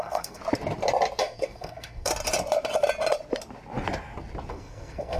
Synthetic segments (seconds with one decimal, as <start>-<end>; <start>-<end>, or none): 0.0-0.4; 1.2-2.1; 4.5-5.2